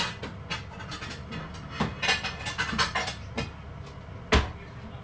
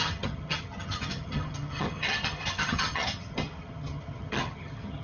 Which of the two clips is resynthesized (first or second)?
second